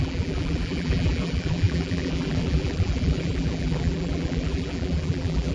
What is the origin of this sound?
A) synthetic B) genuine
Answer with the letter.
A